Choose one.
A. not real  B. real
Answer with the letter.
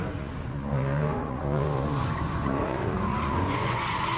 A